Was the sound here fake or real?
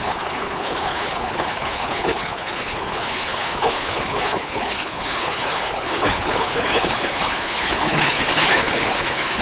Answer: fake